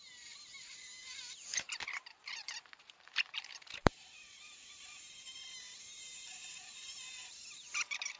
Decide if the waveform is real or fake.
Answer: fake